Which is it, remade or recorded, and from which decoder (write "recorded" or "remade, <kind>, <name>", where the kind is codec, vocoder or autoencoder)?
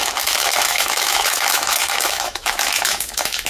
remade, autoencoder, DAC-VAE